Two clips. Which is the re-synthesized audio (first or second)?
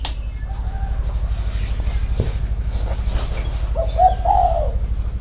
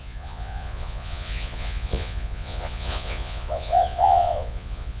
second